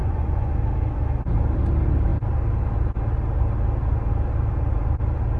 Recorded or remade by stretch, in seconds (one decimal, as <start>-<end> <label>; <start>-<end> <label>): 0.0-0.5 remade; 0.5-5.4 recorded